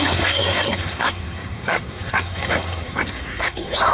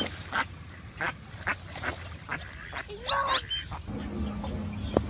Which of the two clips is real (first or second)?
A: second